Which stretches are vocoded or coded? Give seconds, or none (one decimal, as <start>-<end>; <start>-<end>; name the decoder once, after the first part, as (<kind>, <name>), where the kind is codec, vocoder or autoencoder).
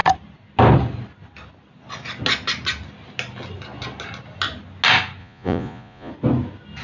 5.2-6.1 (vocoder, Vocos)